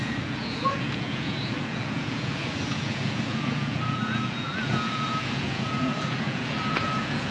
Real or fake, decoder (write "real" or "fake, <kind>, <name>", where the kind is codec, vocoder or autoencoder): fake, vocoder, Vocos